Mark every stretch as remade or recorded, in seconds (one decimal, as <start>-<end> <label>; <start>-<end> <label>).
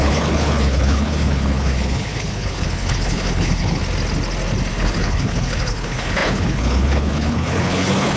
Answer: 0.0-3.8 remade; 3.8-4.7 recorded; 4.7-8.2 remade